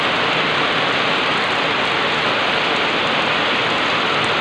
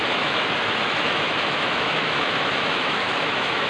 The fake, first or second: second